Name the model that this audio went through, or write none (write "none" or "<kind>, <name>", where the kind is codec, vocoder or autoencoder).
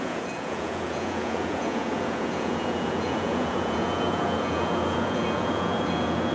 vocoder, Vocos